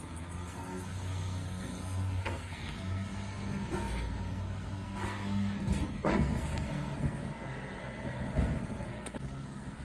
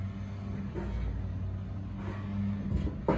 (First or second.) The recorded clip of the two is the second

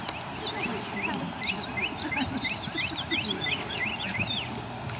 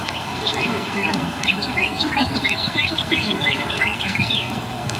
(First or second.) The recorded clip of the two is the first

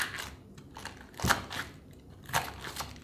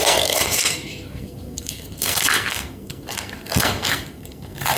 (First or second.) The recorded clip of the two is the first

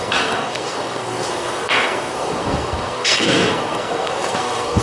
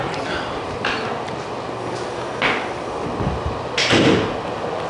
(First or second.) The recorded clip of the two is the second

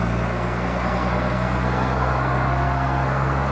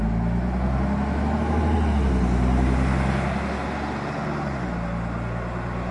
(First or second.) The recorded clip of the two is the second